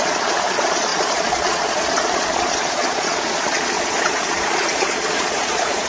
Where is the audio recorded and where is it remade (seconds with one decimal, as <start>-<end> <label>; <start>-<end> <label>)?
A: 0.0-5.9 remade